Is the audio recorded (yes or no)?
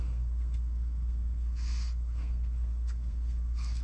no